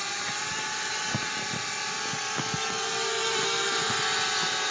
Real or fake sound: real